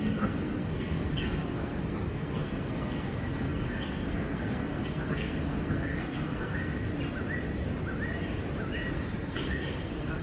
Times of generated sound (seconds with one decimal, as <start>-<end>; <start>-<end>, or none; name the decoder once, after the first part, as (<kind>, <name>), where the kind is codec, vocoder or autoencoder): 0.0-6.9 (codec, SNAC); 8.9-10.2